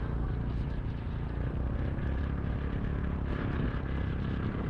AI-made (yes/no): no